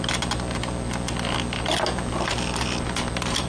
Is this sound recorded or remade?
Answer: recorded